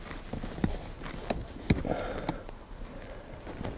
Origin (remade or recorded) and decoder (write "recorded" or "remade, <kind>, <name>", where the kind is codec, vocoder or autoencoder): recorded